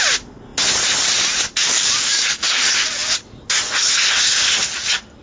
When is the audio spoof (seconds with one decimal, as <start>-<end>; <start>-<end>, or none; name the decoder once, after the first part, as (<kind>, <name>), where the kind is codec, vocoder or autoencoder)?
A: 1.6-2.6 (codec, DAC)